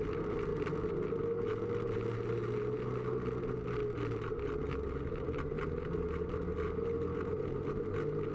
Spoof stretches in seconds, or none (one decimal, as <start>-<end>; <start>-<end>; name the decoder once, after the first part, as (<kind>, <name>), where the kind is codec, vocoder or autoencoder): none